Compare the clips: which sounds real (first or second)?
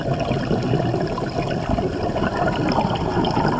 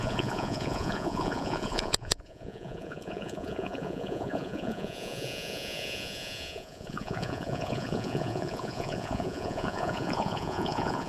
first